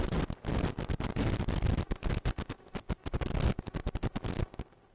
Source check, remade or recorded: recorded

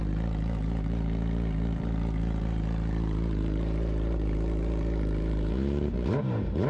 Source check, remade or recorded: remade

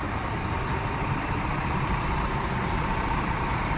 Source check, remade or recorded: remade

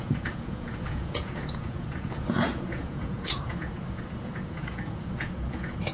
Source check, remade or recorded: remade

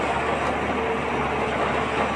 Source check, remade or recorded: recorded